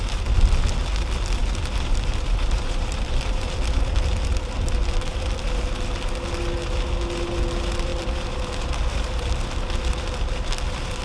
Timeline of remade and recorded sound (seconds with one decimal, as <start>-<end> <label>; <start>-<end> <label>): 0.0-1.4 recorded; 1.4-3.9 remade; 3.9-5.1 recorded; 5.1-5.7 remade; 5.7-7.9 recorded; 7.9-9.6 remade; 9.6-11.0 recorded